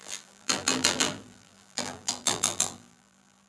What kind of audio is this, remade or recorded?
remade